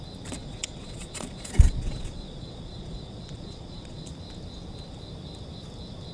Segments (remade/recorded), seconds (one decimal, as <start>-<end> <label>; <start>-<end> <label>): 0.0-0.4 recorded; 0.4-4.1 remade; 4.1-6.1 recorded